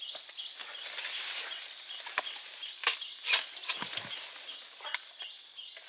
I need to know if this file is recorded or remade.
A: recorded